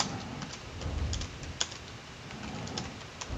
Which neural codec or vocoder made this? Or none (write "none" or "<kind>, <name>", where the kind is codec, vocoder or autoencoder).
none